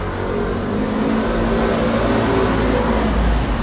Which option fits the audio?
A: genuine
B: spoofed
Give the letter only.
A